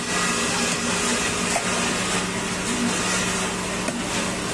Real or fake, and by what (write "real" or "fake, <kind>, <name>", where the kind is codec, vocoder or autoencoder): real